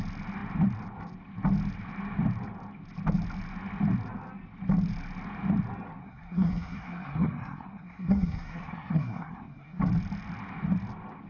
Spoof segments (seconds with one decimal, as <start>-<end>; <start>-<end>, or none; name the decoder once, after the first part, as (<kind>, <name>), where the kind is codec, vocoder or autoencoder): 6.0-9.8 (codec, SNAC)